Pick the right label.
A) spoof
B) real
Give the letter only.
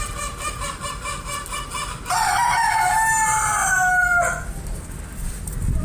B